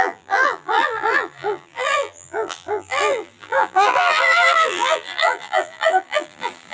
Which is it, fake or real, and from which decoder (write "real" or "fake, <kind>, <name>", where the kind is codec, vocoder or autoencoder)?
fake, vocoder, BigVGAN v2